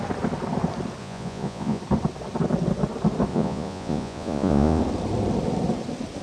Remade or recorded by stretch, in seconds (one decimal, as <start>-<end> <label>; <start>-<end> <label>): 0.0-1.0 recorded; 1.0-1.8 remade; 1.8-3.3 recorded; 3.3-4.8 remade; 4.8-6.2 recorded